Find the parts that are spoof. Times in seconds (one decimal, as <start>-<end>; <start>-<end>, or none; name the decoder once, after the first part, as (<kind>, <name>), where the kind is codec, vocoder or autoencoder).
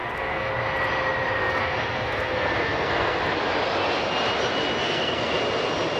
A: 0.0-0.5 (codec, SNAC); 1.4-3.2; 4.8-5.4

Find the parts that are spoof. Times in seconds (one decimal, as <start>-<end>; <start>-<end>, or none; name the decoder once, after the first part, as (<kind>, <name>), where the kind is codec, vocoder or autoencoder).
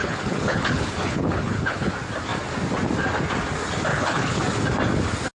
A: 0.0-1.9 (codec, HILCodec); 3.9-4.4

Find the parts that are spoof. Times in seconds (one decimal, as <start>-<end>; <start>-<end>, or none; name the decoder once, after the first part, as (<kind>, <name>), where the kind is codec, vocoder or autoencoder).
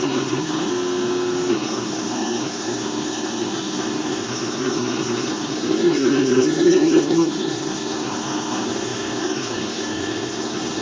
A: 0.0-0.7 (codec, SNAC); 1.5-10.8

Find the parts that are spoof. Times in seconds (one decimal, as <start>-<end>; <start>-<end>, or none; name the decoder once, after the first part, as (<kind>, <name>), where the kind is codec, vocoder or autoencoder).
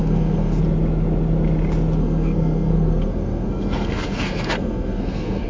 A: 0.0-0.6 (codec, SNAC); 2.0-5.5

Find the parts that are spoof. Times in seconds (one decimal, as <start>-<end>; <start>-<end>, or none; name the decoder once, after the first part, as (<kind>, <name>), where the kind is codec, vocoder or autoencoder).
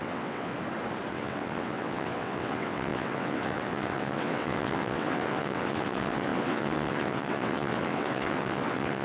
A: 0.0-0.5 (vocoder, WaveNeXt); 1.1-9.0